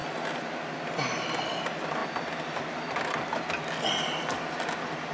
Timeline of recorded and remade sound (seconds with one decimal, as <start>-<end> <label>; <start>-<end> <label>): 0.0-1.5 recorded; 1.5-2.0 remade; 2.0-5.1 recorded